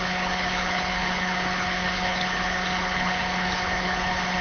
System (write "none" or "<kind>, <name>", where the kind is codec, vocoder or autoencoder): codec, HILCodec